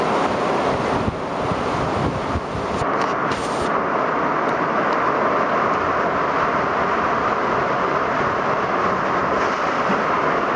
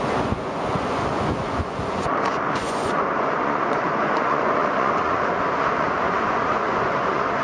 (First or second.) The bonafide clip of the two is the first